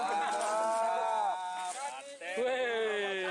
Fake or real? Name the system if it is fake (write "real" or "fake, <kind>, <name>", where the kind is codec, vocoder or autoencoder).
real